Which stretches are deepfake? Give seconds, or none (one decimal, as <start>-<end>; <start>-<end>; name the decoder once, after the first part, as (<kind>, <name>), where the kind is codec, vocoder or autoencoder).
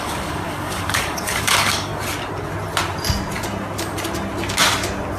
0.0-1.9 (codec, DAC)